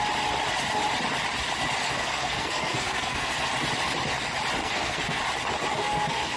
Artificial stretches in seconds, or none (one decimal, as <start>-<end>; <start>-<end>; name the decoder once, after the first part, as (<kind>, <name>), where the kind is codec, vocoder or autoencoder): 1.8-3.5 (codec, SNAC); 4.6-5.2; 5.7-6.4